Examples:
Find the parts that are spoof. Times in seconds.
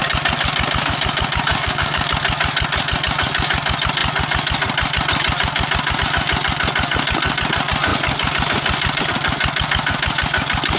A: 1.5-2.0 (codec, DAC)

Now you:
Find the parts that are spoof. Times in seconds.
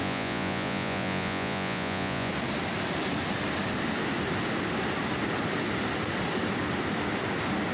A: 0.0-2.3 (vocoder, Vocos)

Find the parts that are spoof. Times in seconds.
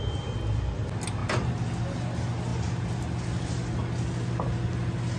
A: none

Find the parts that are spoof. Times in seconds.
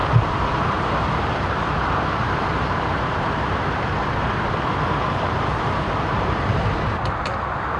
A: 1.2-4.1 (vocoder, BigVGAN v2); 5.0-7.8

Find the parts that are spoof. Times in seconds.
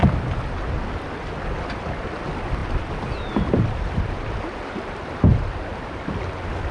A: 2.6-6.1 (vocoder, BigVGAN v2)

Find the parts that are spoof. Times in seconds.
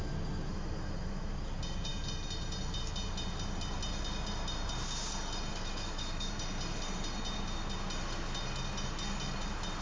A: 0.5-1.3 (autoencoder, DAC-VAE); 5.5-6.3